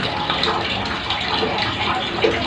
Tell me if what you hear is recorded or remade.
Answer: recorded